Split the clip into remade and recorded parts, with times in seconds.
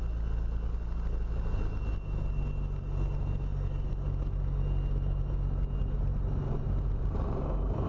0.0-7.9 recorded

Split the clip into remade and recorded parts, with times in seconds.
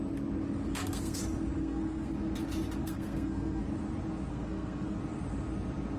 0.0-0.7 recorded; 0.7-1.2 remade; 1.2-1.6 recorded; 1.6-2.1 remade; 2.1-2.8 recorded; 2.8-3.6 remade; 3.6-4.3 recorded; 4.3-5.0 remade; 5.0-6.0 recorded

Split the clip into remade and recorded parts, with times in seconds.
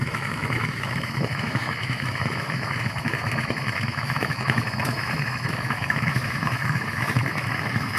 0.0-8.0 remade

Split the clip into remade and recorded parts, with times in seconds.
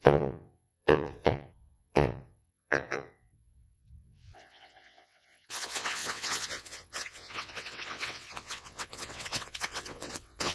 0.0-10.5 remade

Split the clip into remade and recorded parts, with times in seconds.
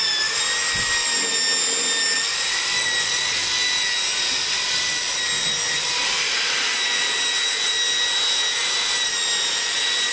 0.0-10.1 recorded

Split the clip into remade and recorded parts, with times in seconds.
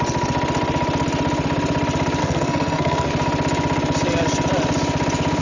0.0-2.2 recorded; 2.2-3.1 remade; 3.1-5.4 recorded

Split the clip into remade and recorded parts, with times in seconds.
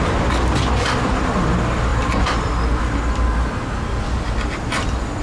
0.0-5.2 recorded